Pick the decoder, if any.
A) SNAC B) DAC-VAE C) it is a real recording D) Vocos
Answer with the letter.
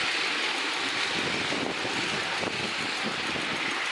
C